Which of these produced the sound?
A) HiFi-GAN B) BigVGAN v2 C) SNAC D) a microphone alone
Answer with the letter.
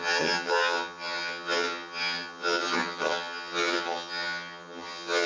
A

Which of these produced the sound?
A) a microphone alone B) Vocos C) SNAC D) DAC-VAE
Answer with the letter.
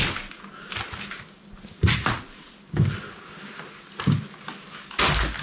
A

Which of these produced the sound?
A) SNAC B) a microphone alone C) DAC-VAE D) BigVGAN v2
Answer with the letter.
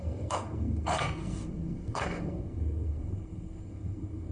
A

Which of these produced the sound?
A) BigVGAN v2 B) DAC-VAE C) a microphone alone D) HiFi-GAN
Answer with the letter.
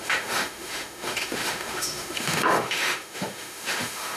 B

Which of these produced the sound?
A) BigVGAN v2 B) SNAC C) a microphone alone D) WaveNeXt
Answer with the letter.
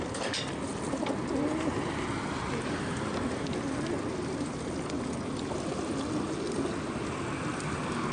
C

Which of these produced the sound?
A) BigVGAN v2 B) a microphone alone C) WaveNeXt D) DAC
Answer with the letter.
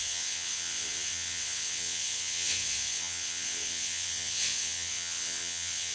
C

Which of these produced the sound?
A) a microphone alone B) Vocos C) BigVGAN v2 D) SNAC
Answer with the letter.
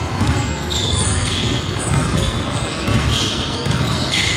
D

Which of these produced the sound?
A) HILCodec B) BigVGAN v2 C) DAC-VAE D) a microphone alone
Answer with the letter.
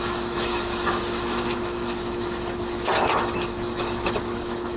C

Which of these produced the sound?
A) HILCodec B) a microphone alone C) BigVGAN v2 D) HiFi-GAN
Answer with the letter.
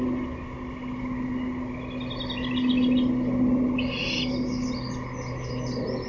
B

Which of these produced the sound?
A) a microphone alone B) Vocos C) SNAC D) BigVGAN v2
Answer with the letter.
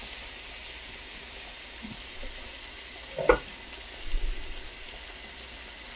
A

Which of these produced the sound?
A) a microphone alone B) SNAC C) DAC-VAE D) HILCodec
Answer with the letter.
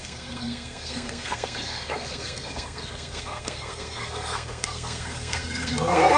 B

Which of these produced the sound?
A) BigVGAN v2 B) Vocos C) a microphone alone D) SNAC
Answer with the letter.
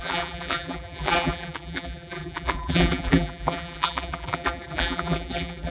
A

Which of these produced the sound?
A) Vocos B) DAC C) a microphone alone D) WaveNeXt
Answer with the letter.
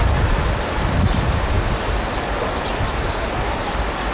C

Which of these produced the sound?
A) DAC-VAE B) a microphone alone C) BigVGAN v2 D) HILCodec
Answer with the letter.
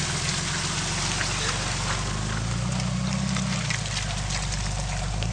B